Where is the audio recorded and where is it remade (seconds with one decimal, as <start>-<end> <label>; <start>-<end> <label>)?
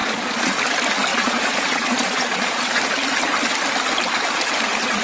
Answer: 0.0-0.6 remade; 0.6-1.1 recorded; 1.1-2.8 remade; 2.8-5.0 recorded